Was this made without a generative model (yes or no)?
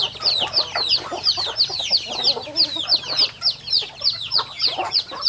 yes